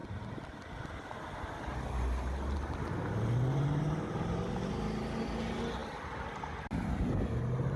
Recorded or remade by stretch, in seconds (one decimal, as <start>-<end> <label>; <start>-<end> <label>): 0.0-7.8 recorded